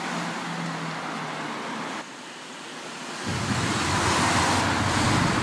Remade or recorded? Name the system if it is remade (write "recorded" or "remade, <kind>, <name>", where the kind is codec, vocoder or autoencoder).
recorded